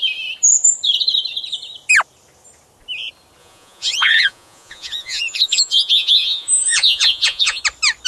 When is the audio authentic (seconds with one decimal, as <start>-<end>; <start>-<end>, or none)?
0.0-3.4; 7.6-8.1